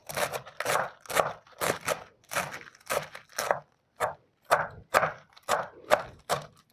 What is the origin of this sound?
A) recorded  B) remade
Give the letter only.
A